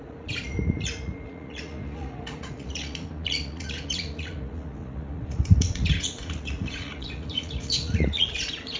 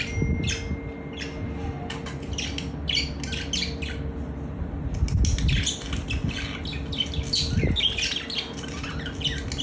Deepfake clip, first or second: first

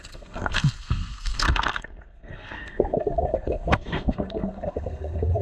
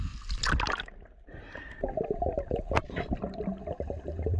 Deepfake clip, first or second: first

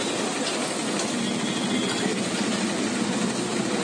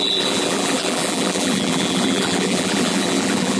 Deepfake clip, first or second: second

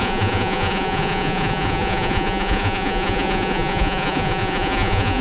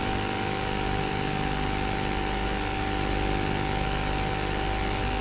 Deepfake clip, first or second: first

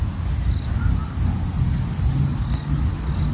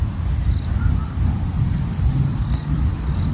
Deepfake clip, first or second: second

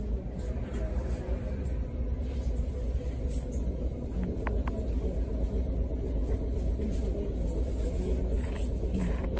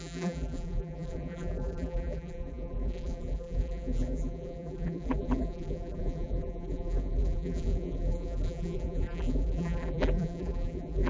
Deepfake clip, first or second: second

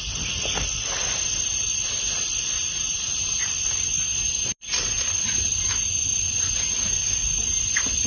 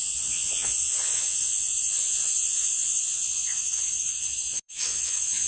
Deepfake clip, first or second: second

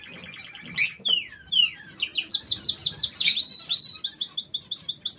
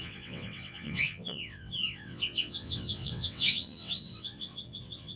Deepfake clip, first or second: second